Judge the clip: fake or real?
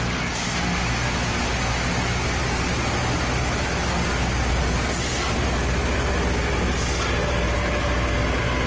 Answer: real